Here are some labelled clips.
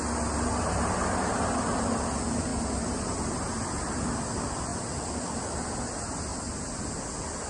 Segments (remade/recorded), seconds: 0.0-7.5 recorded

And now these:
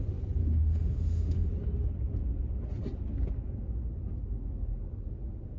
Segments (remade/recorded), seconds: 0.0-0.4 recorded; 0.4-1.5 remade; 1.5-5.6 recorded

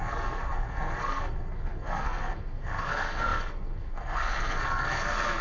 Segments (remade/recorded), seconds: 0.0-5.4 remade

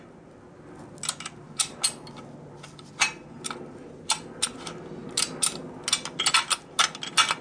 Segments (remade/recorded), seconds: 0.0-7.4 recorded

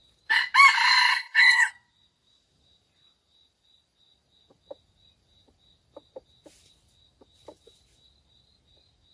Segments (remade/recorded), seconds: 0.0-1.1 recorded; 1.1-1.7 remade; 1.7-9.1 recorded

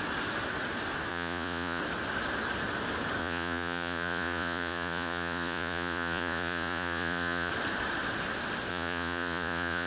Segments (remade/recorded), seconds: 0.0-1.1 recorded; 1.1-1.8 remade; 1.8-3.2 recorded; 3.2-7.5 remade; 7.5-8.7 recorded; 8.7-9.9 remade